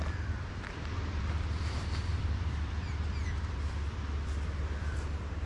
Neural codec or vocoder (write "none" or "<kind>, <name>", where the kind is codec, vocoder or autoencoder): vocoder, BigVGAN v2